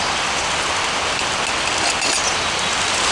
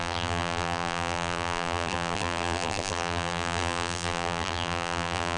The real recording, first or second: first